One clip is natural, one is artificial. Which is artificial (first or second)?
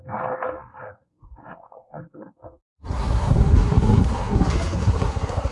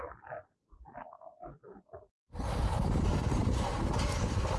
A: first